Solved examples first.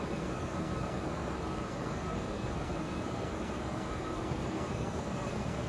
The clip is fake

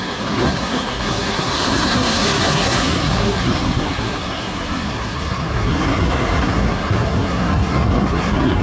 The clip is fake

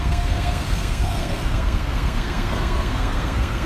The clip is fake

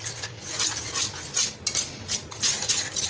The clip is real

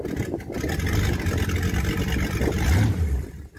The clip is real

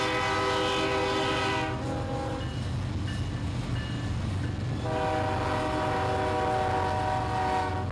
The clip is real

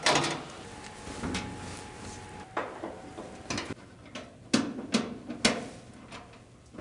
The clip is real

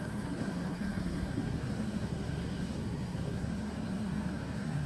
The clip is fake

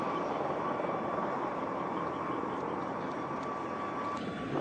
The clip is real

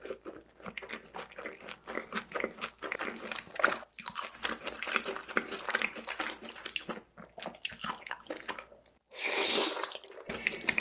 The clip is real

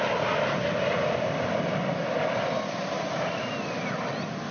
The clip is real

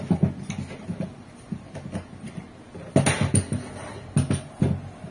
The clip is real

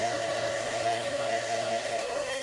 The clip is fake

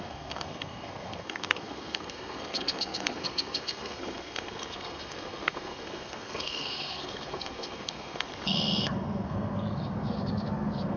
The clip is fake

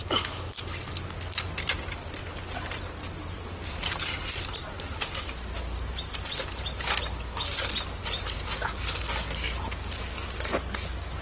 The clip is real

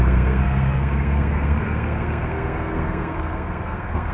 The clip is fake